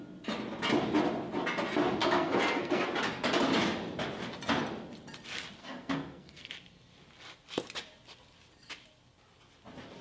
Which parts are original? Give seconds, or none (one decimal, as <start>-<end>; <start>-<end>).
0.0-2.0; 2.9-5.6; 6.5-10.0